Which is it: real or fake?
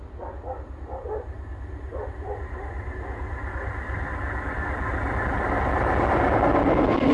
real